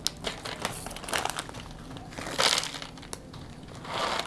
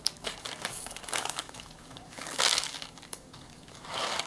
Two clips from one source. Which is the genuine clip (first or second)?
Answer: first